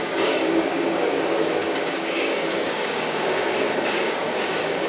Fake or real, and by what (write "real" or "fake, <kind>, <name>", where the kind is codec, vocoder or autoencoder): fake, codec, DAC